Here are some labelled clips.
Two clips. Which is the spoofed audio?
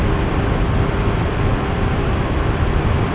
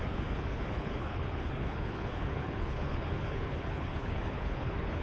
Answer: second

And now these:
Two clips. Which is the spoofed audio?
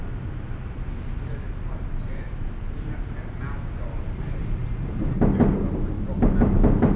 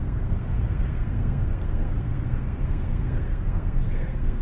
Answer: second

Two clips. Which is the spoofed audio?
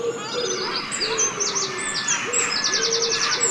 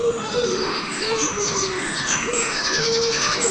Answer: second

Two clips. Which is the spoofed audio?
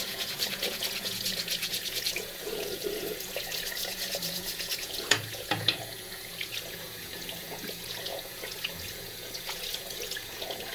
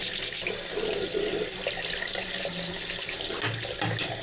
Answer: first